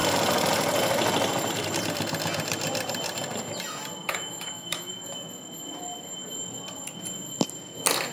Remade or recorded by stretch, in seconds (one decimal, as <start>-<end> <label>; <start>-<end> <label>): 0.0-4.0 recorded; 4.0-4.9 remade; 4.9-8.1 recorded